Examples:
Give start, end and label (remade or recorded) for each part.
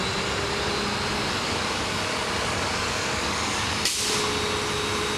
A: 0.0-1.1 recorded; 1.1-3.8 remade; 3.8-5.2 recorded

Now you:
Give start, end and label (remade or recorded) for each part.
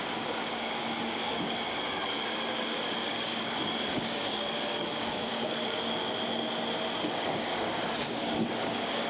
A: 0.0-6.0 remade; 6.0-7.0 recorded; 7.0-9.1 remade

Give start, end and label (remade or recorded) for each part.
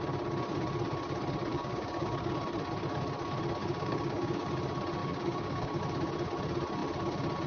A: 0.0-1.5 recorded; 1.5-2.3 remade; 2.3-3.6 recorded; 3.6-4.5 remade; 4.5-5.0 recorded; 5.0-5.8 remade; 5.8-7.5 recorded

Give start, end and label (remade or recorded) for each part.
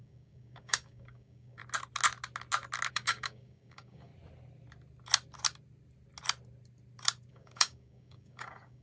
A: 0.0-1.6 remade; 1.6-2.9 recorded; 2.9-4.1 remade; 4.1-7.3 recorded; 7.3-8.8 remade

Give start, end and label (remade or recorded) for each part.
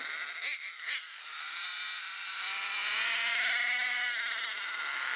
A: 0.0-5.2 recorded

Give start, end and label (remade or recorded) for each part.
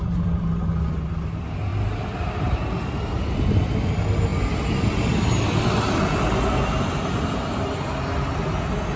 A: 0.0-9.0 recorded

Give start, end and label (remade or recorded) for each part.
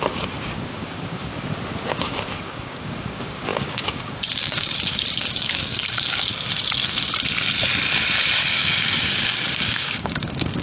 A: 0.0-1.3 remade; 1.3-1.9 recorded; 1.9-6.3 remade; 6.3-8.5 recorded; 8.5-10.6 remade